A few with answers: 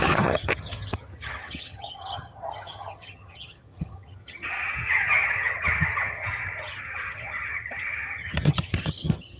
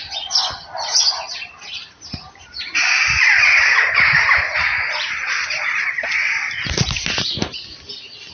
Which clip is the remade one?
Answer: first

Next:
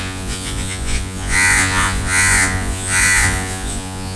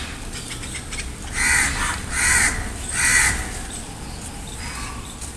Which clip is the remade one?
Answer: first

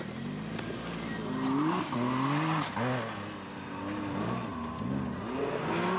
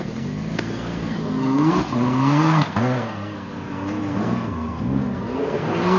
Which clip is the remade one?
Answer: second